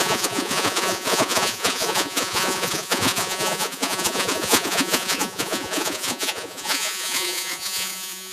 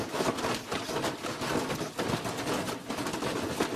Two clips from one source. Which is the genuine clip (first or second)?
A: second